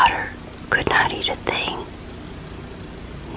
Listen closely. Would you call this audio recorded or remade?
recorded